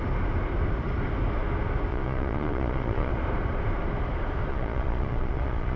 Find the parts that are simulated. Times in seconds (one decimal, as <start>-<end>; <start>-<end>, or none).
1.9-3.1; 4.5-5.8